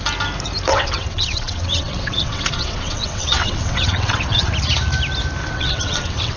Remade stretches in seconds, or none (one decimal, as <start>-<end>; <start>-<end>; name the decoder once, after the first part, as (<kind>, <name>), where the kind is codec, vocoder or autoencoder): 0.7-4.5 (vocoder, WaveNeXt); 5.4-6.4